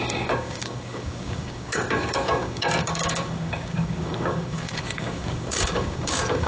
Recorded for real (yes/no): no